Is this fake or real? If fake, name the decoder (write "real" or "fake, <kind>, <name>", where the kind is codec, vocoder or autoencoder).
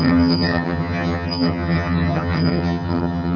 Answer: fake, vocoder, HiFi-GAN